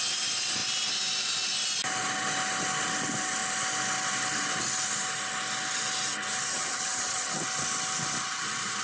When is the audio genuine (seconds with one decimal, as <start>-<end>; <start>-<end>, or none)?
0.0-6.5; 7.4-8.8